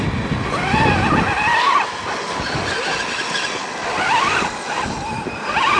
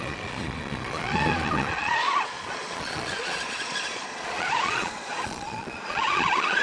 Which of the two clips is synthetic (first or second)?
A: second